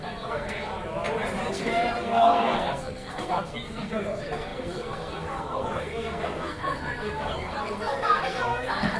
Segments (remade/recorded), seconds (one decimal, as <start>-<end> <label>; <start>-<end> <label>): 0.0-0.7 remade; 0.7-1.5 recorded; 1.5-9.0 remade